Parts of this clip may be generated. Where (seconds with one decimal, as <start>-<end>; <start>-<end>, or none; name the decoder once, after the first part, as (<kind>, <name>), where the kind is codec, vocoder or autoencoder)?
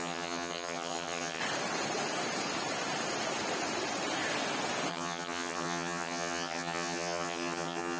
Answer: 0.0-1.4 (vocoder, HiFi-GAN); 4.9-8.0